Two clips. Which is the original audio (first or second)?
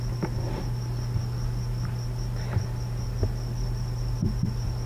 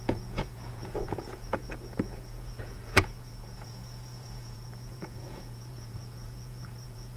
first